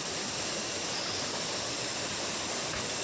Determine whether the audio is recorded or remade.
recorded